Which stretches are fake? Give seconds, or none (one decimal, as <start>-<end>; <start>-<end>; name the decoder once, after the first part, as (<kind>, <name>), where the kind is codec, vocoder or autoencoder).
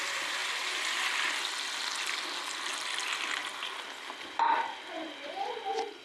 none